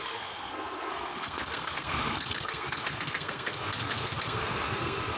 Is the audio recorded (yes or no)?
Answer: no